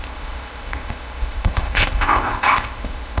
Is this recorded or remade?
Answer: remade